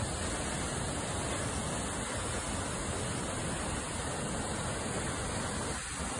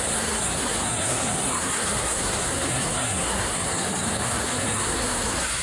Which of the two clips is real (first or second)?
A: first